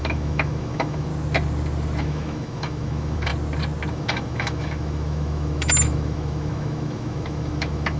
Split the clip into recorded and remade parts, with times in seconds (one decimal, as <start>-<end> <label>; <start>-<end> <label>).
0.0-1.1 remade; 1.1-2.0 recorded; 2.0-3.3 remade; 3.3-3.9 recorded; 3.9-8.0 remade